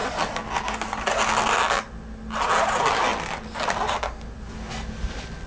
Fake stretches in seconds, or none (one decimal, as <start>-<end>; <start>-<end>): none